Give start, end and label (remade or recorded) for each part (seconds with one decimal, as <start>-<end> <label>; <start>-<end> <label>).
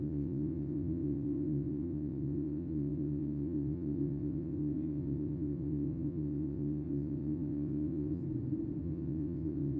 0.0-8.2 remade; 8.2-8.8 recorded; 8.8-9.8 remade